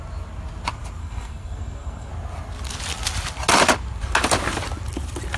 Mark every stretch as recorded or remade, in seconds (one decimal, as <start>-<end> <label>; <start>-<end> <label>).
0.0-1.0 recorded; 1.0-2.1 remade; 2.1-5.4 recorded